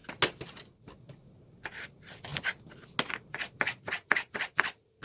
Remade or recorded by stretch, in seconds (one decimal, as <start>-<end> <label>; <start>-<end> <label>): 0.0-0.9 recorded; 0.9-2.3 remade; 2.3-3.1 recorded; 3.1-5.0 remade